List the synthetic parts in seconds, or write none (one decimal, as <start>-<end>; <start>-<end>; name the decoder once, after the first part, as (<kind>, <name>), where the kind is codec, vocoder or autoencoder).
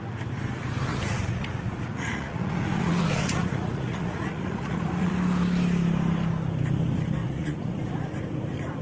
0.9-5.1 (vocoder, Vocos); 7.2-7.8